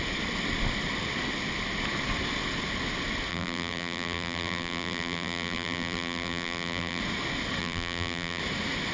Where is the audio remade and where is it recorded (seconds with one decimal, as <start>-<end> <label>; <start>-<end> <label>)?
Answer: 0.0-3.3 recorded; 3.3-7.0 remade; 7.0-7.6 recorded; 7.6-8.4 remade; 8.4-8.9 recorded